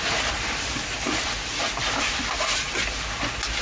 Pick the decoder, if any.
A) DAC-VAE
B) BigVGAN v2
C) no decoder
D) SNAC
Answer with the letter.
C